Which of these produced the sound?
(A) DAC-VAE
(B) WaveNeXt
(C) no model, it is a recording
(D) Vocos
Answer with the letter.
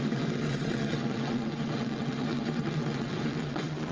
B